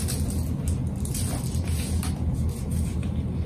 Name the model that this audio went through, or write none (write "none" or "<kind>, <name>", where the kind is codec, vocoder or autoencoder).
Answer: none